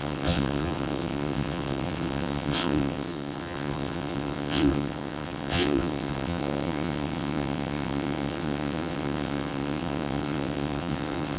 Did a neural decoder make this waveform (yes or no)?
yes